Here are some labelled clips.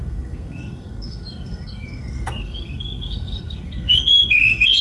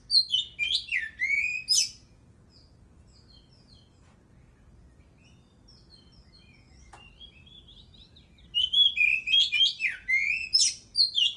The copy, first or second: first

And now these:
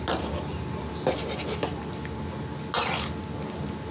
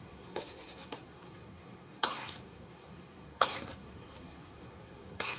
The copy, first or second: second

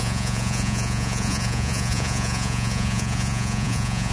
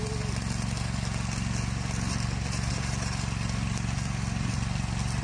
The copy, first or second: first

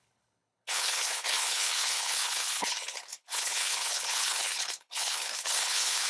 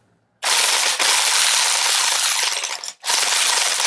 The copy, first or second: first